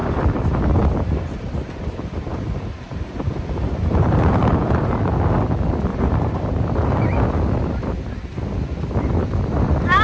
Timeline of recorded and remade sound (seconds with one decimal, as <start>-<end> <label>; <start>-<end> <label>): 0.0-5.0 remade; 5.0-5.9 recorded; 5.9-6.4 remade; 6.4-10.0 recorded